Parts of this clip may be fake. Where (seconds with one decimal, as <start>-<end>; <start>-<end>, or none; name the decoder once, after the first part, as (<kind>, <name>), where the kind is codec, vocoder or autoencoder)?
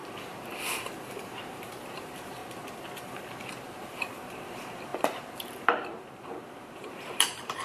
0.7-2.4 (vocoder, BigVGAN v2); 3.0-7.6